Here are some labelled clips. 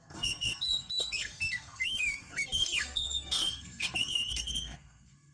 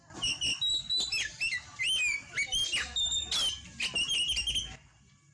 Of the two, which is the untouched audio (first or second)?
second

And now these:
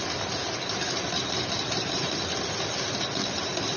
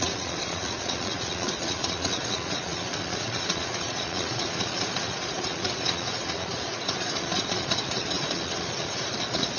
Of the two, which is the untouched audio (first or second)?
first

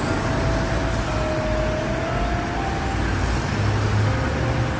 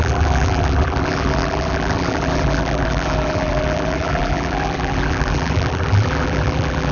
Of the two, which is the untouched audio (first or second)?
first